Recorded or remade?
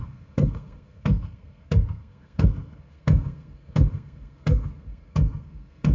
remade